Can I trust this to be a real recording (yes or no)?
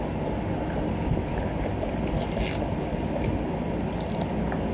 yes